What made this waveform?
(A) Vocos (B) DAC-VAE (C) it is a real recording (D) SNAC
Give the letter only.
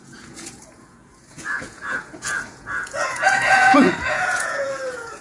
A